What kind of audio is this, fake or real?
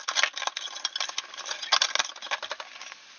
real